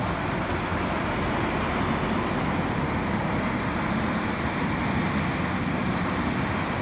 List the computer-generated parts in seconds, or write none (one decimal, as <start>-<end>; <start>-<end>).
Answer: 5.8-6.3